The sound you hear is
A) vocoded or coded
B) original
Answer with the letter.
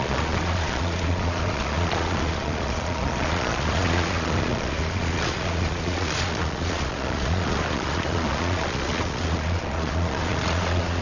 A